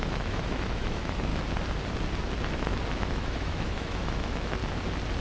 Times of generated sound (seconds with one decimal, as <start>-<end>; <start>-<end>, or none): 0.0-1.3; 2.9-4.6